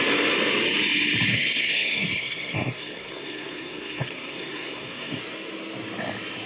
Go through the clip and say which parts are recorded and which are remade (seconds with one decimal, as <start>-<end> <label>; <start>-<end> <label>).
0.0-1.3 recorded; 1.3-5.2 remade; 5.2-6.5 recorded